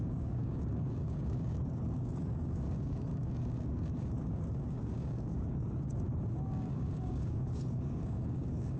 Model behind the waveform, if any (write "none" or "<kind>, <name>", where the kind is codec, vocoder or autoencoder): codec, DAC